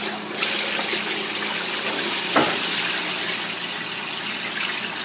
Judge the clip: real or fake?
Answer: real